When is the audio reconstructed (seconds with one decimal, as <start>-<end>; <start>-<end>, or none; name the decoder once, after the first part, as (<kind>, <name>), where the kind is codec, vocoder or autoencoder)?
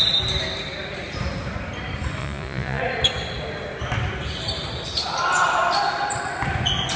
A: 2.2-2.8 (vocoder, Vocos)